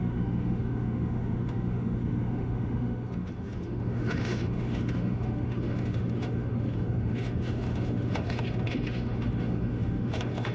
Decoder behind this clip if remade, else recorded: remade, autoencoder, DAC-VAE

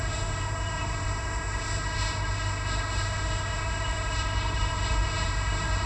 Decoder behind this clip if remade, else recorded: remade, autoencoder, DAC-VAE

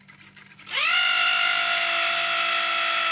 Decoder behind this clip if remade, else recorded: recorded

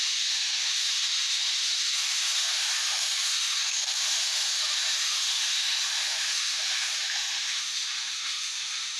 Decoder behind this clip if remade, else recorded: remade, autoencoder, DAC-VAE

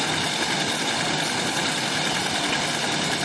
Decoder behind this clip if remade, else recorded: recorded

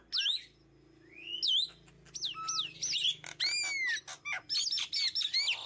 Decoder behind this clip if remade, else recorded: recorded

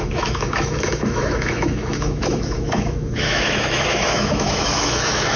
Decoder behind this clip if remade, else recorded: remade, autoencoder, DAC-VAE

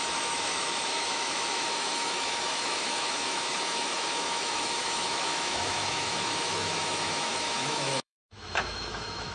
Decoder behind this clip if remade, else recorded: remade, autoencoder, DAC-VAE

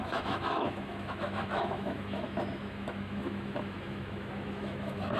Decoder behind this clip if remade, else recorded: remade, autoencoder, DAC-VAE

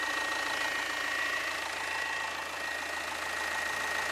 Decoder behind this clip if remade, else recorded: recorded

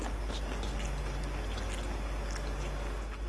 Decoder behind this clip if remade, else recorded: recorded